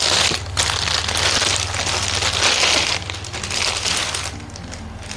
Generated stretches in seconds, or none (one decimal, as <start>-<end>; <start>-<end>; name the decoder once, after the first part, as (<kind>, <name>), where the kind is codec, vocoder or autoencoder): none